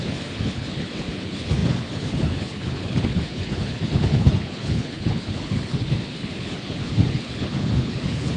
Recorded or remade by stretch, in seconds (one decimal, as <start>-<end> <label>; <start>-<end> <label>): 0.0-8.4 remade